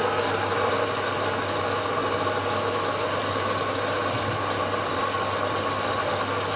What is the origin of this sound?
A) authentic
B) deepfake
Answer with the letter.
A